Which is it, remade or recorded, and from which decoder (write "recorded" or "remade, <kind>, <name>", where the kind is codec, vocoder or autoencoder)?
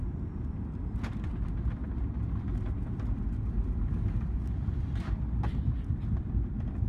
remade, vocoder, BigVGAN v2